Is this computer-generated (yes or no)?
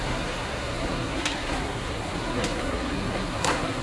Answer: yes